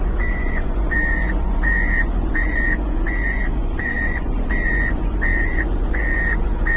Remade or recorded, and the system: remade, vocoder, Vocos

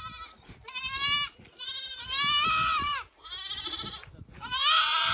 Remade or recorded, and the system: recorded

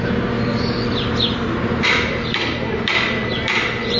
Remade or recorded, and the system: recorded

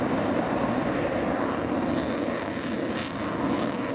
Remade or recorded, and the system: recorded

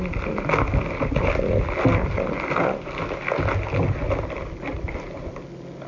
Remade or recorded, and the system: recorded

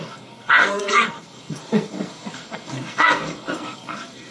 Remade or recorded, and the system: remade, codec, SNAC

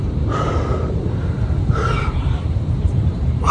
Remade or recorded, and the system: remade, vocoder, BigVGAN v2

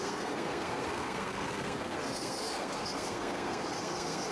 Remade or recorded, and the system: remade, codec, SNAC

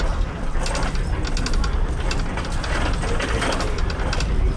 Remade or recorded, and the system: recorded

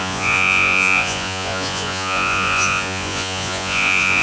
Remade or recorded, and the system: remade, vocoder, Vocos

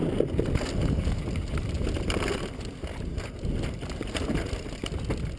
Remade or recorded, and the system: recorded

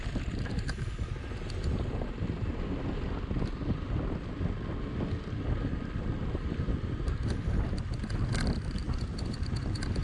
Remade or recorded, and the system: recorded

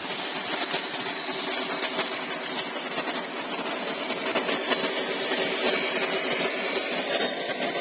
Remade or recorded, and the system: recorded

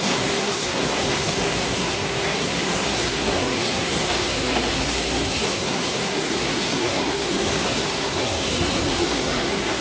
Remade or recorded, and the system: remade, codec, SNAC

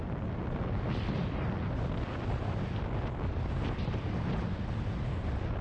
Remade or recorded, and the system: recorded